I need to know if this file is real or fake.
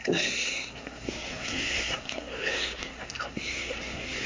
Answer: fake